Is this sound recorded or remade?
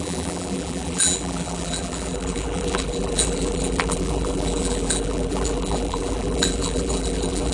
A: remade